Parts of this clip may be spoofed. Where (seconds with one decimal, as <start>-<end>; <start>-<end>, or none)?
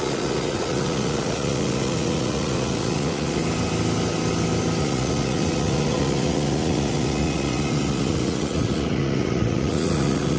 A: 0.0-3.4; 4.8-10.4